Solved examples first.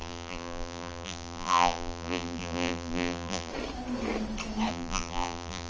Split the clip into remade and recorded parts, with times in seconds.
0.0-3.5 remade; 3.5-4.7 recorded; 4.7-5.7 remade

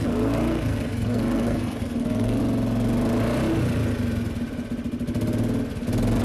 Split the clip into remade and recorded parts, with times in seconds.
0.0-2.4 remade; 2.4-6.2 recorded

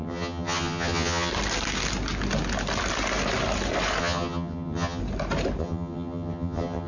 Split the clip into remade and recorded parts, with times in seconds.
0.0-1.3 remade; 1.3-4.0 recorded; 4.0-5.0 remade; 5.0-5.6 recorded; 5.6-6.9 remade

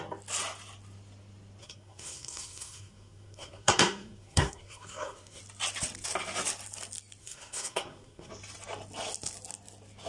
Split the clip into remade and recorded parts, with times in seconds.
0.0-1.6 recorded; 1.6-5.4 remade; 5.4-7.2 recorded; 7.2-8.3 remade; 8.3-10.1 recorded